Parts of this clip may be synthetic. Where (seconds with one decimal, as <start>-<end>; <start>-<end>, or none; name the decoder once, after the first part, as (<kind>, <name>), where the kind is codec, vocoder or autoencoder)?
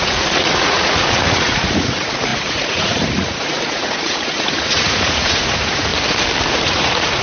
0.0-5.9 (vocoder, Vocos); 6.5-7.2